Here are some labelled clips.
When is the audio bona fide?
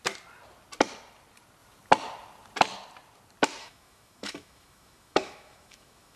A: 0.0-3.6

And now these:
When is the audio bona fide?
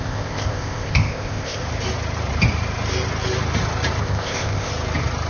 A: 1.6-4.0; 4.7-5.3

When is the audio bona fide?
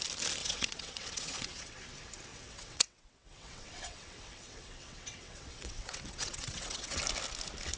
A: 0.0-0.4; 1.8-2.3; 7.0-7.8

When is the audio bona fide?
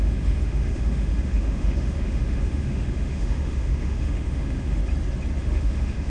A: 4.8-5.4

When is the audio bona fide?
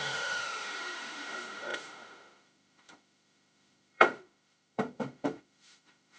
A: none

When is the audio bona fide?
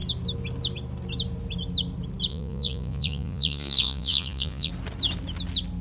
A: 0.0-2.3; 4.7-5.8